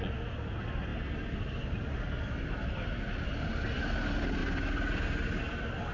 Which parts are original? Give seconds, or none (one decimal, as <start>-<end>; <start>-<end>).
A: 0.0-5.9